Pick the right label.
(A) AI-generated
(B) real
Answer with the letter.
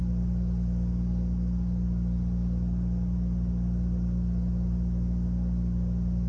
B